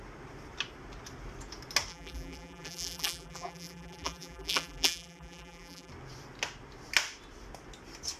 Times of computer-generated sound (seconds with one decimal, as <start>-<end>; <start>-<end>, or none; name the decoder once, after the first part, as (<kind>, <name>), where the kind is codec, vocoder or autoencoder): 1.9-5.9 (vocoder, BigVGAN v2)

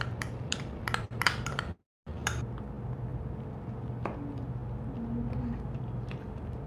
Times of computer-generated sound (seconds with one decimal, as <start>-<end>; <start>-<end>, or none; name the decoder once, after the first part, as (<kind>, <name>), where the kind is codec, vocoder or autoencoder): 1.8-2.5 (vocoder, BigVGAN v2)

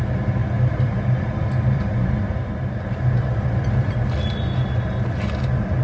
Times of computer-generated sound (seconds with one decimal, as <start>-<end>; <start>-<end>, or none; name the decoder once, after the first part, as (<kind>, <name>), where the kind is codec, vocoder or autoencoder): 0.4-3.9 (vocoder, BigVGAN v2)

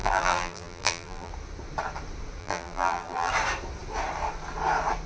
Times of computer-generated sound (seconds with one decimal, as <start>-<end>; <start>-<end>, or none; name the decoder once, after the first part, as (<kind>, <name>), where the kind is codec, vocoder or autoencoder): 0.0-1.3 (vocoder, BigVGAN v2); 2.4-3.3

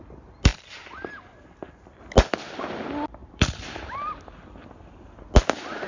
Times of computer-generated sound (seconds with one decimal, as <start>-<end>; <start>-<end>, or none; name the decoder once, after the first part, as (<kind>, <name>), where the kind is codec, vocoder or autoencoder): 3.2-4.2 (vocoder, BigVGAN v2)

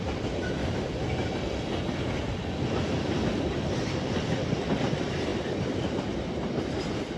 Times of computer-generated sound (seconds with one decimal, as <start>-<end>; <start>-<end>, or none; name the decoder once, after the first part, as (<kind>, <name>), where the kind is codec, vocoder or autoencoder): 0.0-1.2 (vocoder, BigVGAN v2); 2.3-5.3

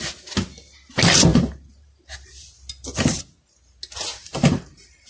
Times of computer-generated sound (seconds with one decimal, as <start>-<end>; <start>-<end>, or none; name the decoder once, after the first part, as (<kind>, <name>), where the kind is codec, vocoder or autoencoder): 1.3-2.5 (vocoder, BigVGAN v2); 4.1-5.1

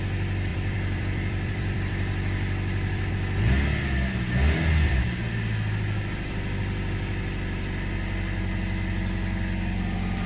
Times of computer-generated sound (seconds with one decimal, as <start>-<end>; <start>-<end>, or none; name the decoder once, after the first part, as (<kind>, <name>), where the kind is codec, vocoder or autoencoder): 0.5-3.1 (vocoder, BigVGAN v2)